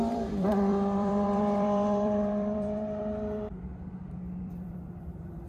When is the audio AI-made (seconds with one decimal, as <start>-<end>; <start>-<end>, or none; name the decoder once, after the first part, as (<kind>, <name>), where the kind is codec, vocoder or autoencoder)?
0.0-3.7 (vocoder, BigVGAN v2); 4.4-5.5